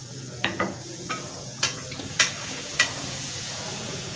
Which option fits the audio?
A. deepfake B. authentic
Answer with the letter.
A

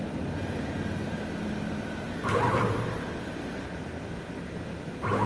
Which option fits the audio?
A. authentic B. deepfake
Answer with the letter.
A